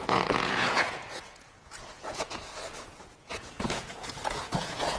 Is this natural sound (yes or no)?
no